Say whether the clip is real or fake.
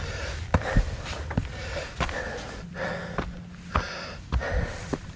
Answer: real